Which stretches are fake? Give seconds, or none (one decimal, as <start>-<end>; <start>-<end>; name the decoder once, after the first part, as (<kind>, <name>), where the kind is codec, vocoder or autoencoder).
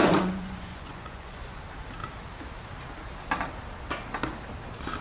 0.0-1.6 (vocoder, Vocos)